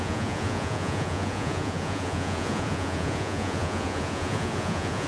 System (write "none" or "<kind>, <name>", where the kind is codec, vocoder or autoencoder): vocoder, Vocos